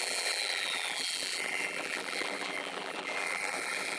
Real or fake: fake